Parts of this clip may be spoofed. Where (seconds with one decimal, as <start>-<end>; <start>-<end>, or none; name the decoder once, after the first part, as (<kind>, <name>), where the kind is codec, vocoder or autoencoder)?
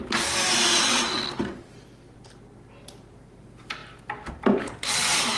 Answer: none